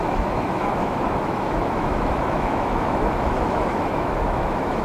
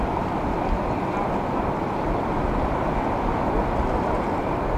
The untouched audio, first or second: second